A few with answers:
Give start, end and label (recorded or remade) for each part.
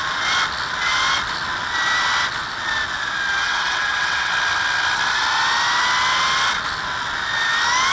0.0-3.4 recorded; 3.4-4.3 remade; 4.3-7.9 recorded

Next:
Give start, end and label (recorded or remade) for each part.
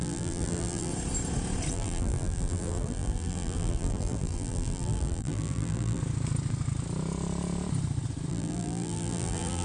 0.0-0.9 remade; 0.9-1.7 recorded; 1.7-6.0 remade; 6.0-8.3 recorded; 8.3-9.6 remade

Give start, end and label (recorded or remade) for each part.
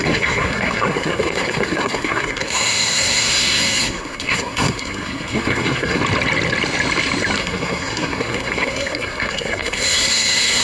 0.0-6.0 remade; 6.0-7.4 recorded; 7.4-10.6 remade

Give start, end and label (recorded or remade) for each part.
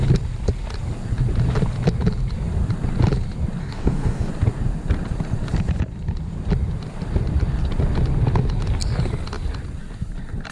0.0-3.6 recorded; 3.6-4.3 remade; 4.3-10.5 recorded